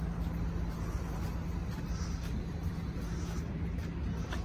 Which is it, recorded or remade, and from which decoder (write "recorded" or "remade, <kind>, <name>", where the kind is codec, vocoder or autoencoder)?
recorded